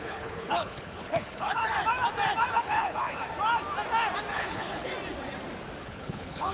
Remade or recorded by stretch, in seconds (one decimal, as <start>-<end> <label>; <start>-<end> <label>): 0.0-1.6 remade; 1.6-2.6 recorded; 2.6-3.2 remade; 3.2-4.3 recorded; 4.3-4.9 remade; 4.9-5.8 recorded; 5.8-6.5 remade